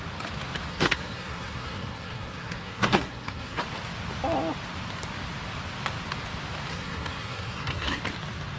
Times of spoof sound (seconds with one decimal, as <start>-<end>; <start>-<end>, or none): 0.7-3.6; 6.7-8.0